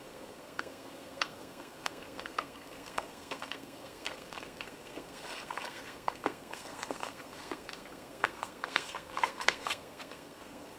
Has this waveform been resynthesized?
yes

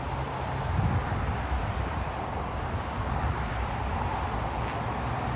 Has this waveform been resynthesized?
no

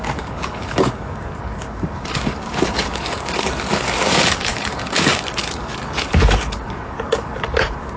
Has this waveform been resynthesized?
yes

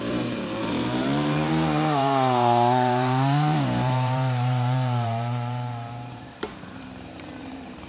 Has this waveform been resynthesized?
yes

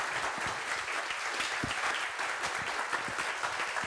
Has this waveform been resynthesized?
no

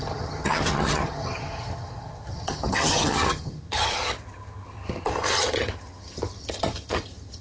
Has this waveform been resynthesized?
yes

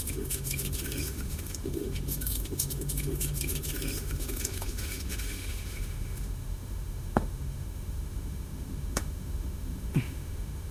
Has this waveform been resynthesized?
yes